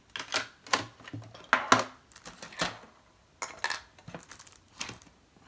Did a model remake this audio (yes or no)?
no